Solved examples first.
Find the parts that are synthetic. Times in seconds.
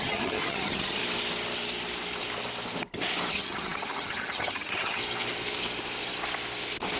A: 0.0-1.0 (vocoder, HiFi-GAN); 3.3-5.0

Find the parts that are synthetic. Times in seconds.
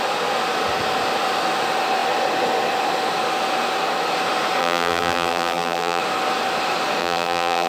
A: 4.6-6.0 (vocoder, BigVGAN v2); 7.0-7.7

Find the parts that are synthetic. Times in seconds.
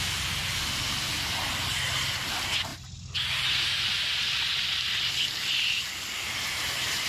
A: none